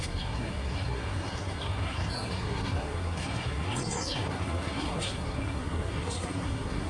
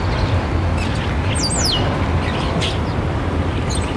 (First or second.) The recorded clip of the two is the second